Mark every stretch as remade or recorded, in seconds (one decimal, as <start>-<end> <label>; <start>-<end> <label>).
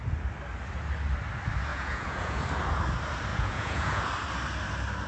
0.0-1.7 recorded; 1.7-2.4 remade; 2.4-3.3 recorded; 3.3-4.0 remade; 4.0-5.1 recorded